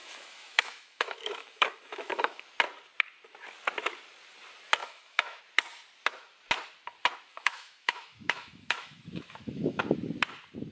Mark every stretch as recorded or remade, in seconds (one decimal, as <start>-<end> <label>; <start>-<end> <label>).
0.0-2.4 remade; 2.4-4.8 recorded; 4.8-5.4 remade; 5.4-7.3 recorded; 7.3-9.8 remade; 9.8-10.7 recorded